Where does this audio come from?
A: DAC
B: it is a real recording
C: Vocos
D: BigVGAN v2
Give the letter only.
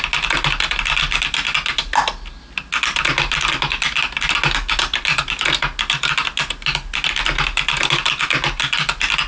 B